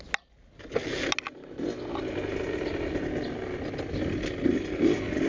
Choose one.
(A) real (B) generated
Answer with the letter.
A